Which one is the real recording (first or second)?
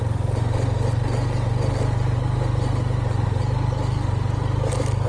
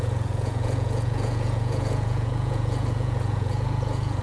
first